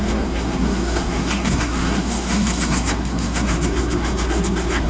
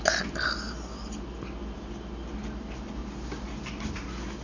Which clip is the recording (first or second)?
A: second